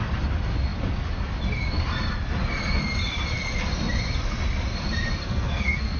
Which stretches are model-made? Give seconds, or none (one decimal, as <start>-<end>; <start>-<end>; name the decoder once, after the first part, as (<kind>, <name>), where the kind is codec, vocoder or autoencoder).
5.2-6.0 (codec, SNAC)